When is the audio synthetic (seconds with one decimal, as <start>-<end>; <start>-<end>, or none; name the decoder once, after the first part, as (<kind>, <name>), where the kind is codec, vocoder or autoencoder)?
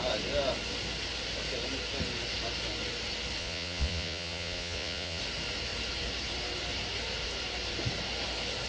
3.4-5.2 (vocoder, Vocos)